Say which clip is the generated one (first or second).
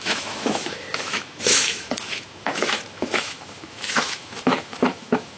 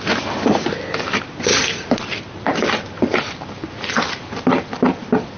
first